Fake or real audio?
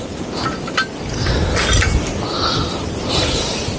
real